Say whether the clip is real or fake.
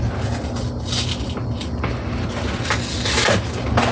real